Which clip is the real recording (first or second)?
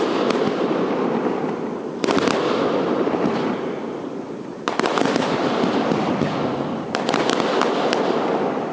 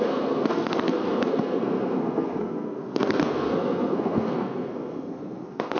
first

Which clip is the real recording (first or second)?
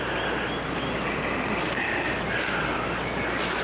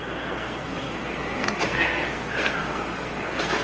first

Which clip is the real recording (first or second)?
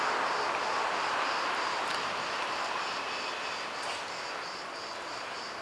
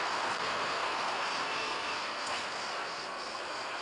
first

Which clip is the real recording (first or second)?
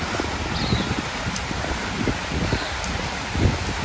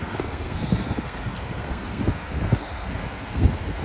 first